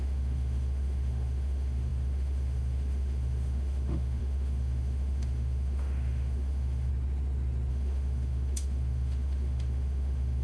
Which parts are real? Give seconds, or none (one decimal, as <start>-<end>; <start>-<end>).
6.9-7.7